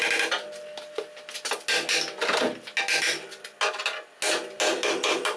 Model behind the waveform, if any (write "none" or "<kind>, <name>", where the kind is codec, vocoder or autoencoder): none